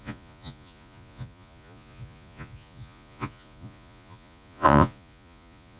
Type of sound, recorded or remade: remade